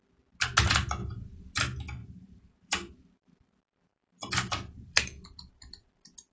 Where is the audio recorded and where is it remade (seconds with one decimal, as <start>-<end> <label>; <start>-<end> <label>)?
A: 0.0-1.0 recorded; 1.0-1.6 remade; 1.6-2.0 recorded; 2.0-5.8 remade; 5.8-6.3 recorded